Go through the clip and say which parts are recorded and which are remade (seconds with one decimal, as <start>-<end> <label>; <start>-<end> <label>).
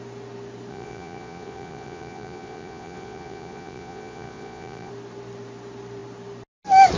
0.0-0.7 recorded; 0.7-4.9 remade; 4.9-7.0 recorded